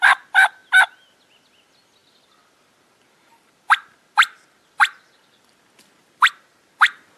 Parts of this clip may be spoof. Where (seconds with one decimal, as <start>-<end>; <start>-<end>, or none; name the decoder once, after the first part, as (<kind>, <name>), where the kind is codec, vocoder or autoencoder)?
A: none